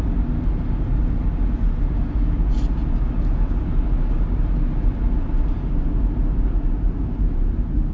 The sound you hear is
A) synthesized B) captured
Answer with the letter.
B